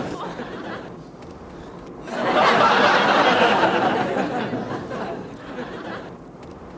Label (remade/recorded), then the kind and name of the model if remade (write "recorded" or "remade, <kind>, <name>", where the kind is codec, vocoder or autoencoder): recorded